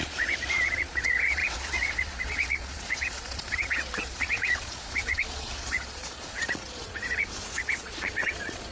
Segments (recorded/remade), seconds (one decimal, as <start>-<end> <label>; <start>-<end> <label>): 0.0-8.7 remade